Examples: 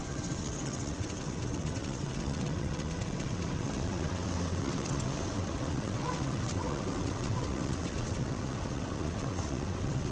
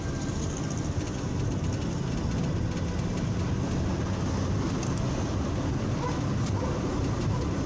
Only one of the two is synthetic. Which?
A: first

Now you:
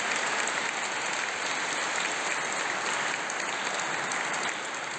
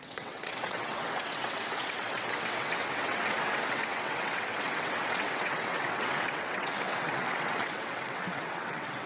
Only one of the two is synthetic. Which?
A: second